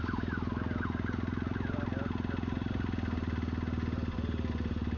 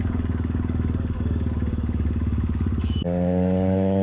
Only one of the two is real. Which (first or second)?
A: first